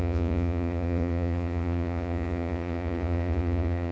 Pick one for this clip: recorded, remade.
remade